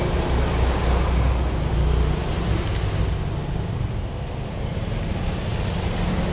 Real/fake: real